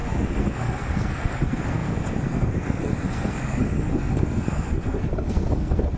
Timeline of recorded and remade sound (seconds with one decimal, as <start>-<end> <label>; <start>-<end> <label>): 0.0-6.0 remade